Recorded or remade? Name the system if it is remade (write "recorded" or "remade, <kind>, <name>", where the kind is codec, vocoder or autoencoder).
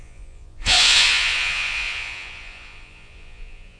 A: remade, vocoder, Vocos